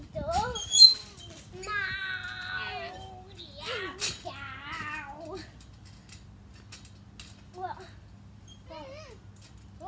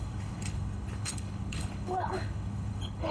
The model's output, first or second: second